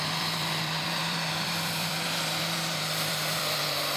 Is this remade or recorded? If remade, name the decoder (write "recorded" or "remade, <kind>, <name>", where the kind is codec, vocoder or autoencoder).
remade, vocoder, BigVGAN v2